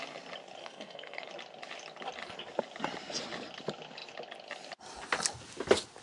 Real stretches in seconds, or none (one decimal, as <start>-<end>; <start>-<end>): 0.0-0.6; 1.3-6.0